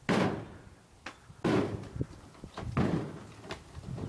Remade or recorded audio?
recorded